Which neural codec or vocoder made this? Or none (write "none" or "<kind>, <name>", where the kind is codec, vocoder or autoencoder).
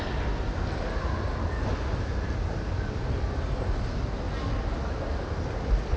none